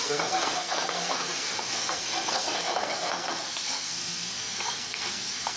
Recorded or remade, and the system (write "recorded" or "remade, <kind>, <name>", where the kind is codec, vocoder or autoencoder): remade, codec, SNAC